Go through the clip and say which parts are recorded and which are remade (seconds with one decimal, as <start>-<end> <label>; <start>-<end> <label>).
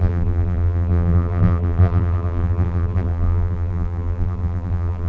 0.0-5.1 remade